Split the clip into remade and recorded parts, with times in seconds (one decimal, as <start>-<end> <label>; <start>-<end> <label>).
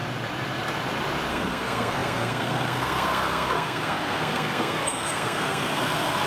0.0-1.3 recorded; 1.3-6.3 remade